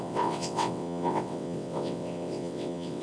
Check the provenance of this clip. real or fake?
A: fake